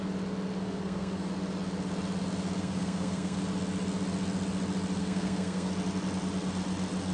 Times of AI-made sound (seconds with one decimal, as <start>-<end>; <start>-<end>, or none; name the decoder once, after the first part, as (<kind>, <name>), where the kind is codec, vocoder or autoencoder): 0.6-1.3 (codec, SNAC); 2.6-3.4; 5.0-5.7